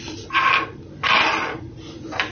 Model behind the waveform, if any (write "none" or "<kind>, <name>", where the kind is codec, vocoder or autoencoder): none